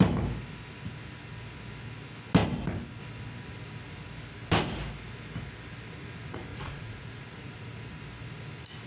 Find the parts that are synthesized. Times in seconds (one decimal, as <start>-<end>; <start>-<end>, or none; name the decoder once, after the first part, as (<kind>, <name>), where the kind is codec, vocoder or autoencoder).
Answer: 6.5-7.7 (vocoder, Vocos)